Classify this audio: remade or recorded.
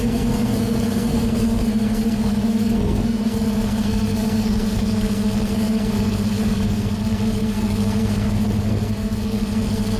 remade